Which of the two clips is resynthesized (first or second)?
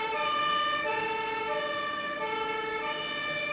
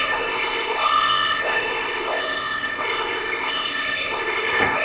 second